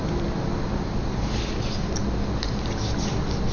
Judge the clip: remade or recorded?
recorded